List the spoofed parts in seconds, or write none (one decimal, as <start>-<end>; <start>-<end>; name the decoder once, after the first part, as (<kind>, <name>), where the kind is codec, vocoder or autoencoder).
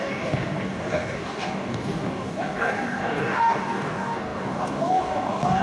0.0-5.6 (codec, DAC)